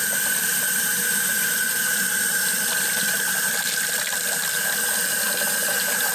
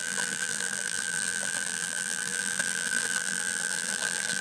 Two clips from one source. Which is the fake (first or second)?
second